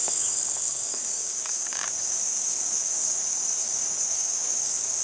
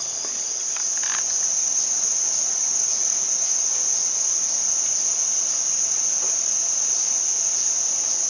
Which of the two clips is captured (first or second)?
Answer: second